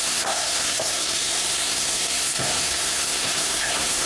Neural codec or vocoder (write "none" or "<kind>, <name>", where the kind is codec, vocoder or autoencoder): codec, SNAC